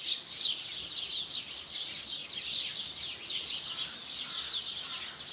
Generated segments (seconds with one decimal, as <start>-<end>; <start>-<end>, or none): none